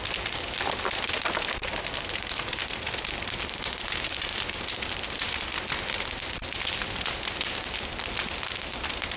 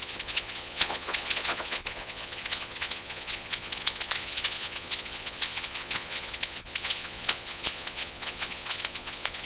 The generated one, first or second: second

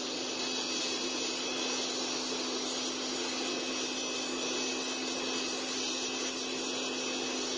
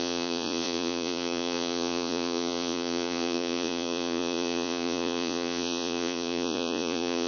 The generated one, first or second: second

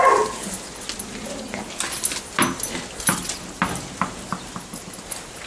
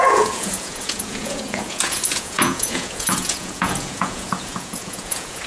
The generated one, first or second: second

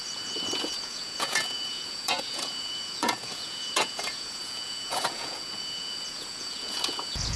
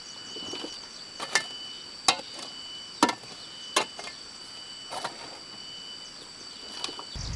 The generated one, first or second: first